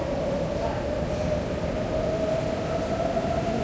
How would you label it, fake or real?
real